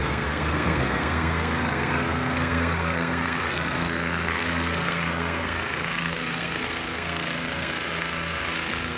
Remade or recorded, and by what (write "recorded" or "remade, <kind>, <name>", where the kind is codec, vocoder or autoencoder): remade, codec, SNAC